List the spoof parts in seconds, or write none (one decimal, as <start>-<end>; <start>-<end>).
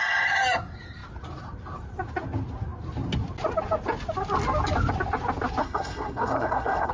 5.6-6.9